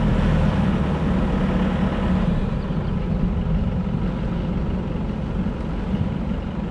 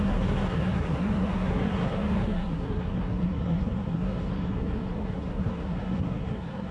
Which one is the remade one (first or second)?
second